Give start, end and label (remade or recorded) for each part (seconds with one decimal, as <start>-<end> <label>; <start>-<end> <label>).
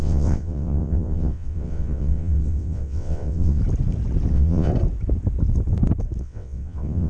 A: 0.0-3.6 remade; 3.6-4.3 recorded; 4.3-4.7 remade; 4.7-6.2 recorded; 6.2-7.1 remade